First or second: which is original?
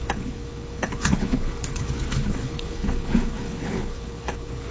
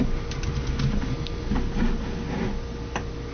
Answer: second